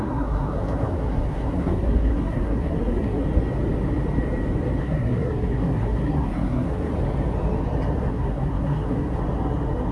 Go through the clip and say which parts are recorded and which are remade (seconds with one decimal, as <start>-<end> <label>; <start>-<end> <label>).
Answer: 0.0-3.2 remade; 3.2-4.8 recorded; 4.8-6.9 remade; 6.9-8.1 recorded; 8.1-9.2 remade; 9.2-9.9 recorded